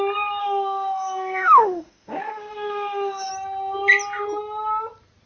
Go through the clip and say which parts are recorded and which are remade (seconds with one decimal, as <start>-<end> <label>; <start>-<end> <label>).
0.0-0.4 recorded; 0.4-3.3 remade; 3.3-5.3 recorded